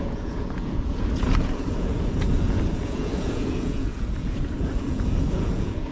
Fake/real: fake